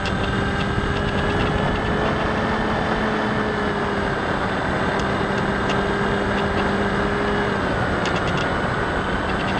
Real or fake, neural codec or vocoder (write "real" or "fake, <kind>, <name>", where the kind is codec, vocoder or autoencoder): real